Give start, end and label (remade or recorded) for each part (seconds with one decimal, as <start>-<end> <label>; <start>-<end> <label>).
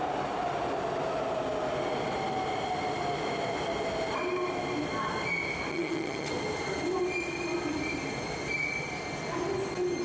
0.0-5.7 recorded; 5.7-6.3 remade; 6.3-10.0 recorded